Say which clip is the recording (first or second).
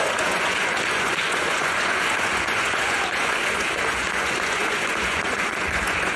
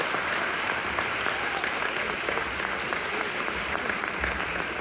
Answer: second